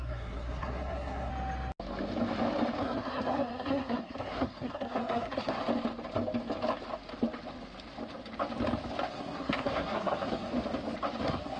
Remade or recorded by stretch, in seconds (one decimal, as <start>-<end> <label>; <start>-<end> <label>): 0.0-1.3 remade; 1.3-2.8 recorded; 2.8-5.6 remade; 5.6-9.1 recorded; 9.1-10.5 remade; 10.5-11.2 recorded; 11.2-11.6 remade